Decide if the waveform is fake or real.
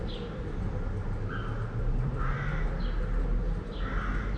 real